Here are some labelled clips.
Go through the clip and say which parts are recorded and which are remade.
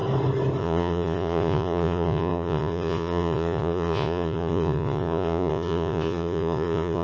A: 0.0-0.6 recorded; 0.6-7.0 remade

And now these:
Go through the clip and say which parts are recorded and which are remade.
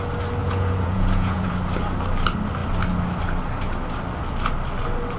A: 0.0-0.4 recorded; 0.4-1.5 remade; 1.5-5.2 recorded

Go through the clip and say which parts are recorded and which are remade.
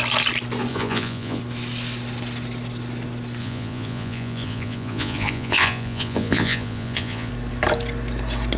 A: 0.0-0.7 recorded; 0.7-1.4 remade; 1.4-3.4 recorded; 3.4-7.3 remade; 7.3-8.6 recorded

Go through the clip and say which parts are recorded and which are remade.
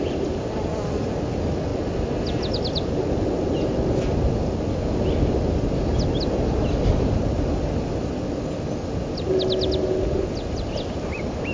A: 0.0-11.5 recorded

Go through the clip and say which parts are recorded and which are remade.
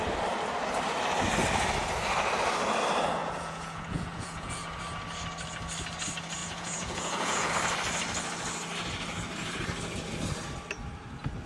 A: 0.0-3.2 recorded; 3.2-4.8 remade; 4.8-6.4 recorded; 6.4-7.5 remade; 7.5-11.5 recorded